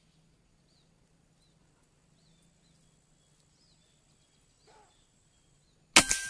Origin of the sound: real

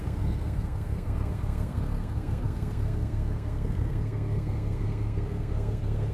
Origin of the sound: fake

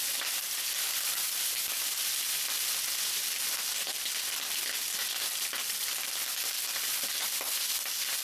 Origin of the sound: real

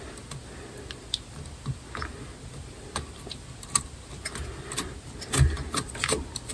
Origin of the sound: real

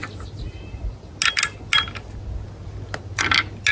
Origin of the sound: real